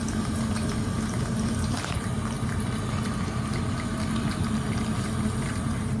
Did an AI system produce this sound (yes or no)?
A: no